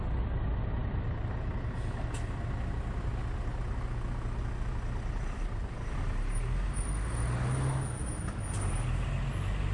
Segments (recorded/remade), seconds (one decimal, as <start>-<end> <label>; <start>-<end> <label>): 0.0-9.7 recorded